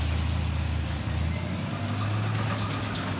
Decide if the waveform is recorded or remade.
recorded